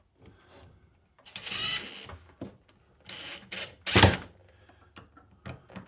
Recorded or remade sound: recorded